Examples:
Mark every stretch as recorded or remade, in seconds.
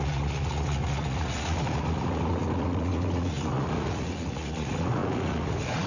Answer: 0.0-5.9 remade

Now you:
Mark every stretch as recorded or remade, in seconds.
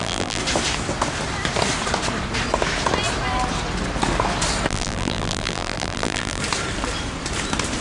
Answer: 0.0-0.4 remade; 0.4-4.7 recorded; 4.7-6.4 remade; 6.4-7.8 recorded